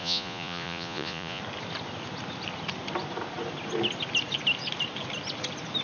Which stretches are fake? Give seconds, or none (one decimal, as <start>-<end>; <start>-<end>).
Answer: 0.0-1.4